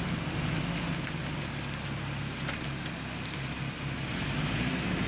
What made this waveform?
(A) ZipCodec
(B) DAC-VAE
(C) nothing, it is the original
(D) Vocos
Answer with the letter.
C